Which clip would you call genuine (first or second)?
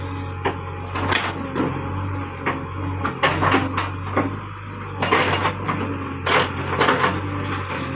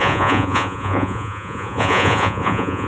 first